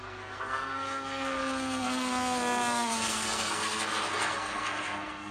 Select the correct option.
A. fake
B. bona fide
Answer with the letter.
A